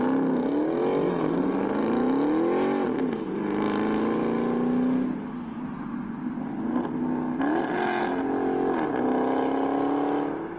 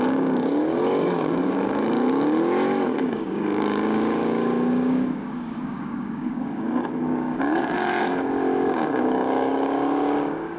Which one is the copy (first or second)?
second